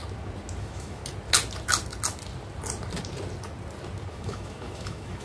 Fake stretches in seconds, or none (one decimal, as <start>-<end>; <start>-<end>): 0.6-1.0; 4.1-5.2